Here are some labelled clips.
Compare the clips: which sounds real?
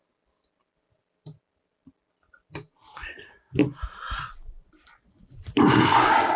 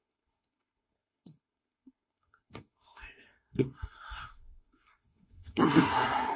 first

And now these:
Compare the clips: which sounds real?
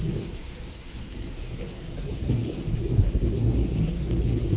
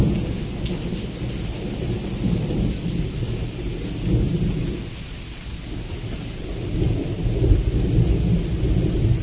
second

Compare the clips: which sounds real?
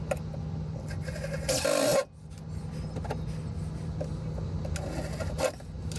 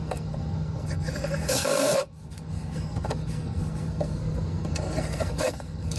first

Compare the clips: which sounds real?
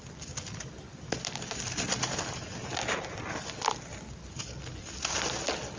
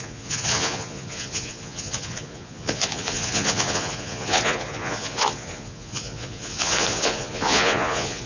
first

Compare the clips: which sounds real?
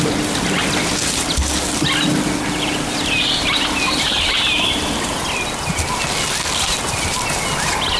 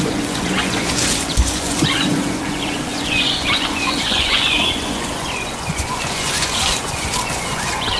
first